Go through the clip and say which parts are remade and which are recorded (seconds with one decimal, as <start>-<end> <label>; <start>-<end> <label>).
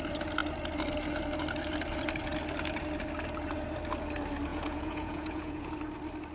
0.0-4.5 recorded; 4.5-5.7 remade; 5.7-6.3 recorded